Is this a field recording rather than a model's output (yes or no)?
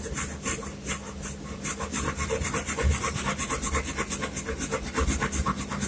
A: yes